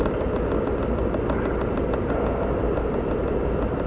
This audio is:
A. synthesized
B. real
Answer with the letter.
B